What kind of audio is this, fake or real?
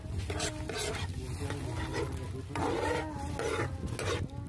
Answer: real